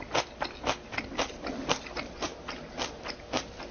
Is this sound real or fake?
real